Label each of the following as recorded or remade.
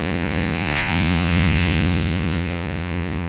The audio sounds remade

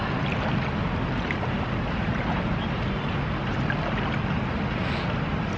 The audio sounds recorded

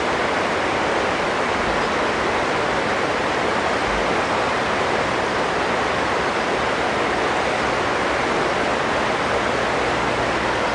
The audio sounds recorded